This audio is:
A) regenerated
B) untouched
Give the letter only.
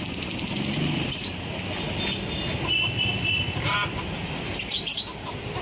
B